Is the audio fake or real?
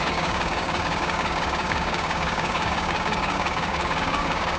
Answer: fake